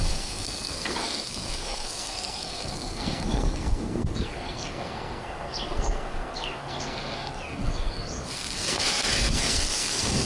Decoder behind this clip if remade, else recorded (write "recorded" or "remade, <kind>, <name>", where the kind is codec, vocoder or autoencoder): remade, codec, SNAC